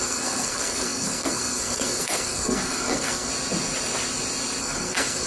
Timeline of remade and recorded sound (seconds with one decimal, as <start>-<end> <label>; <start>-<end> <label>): 0.0-3.3 remade; 3.3-4.6 recorded; 4.6-5.3 remade